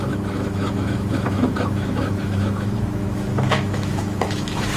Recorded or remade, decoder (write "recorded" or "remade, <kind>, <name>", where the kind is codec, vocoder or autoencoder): remade, autoencoder, DAC-VAE